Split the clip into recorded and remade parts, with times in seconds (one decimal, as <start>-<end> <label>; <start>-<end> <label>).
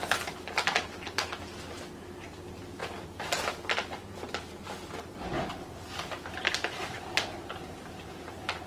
0.0-8.7 recorded